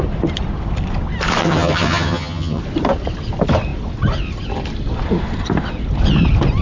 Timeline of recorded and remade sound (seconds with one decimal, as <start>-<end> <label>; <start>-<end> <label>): 0.0-1.4 recorded; 1.4-2.6 remade; 2.6-6.6 recorded